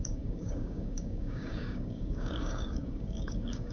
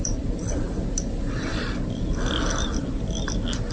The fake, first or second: first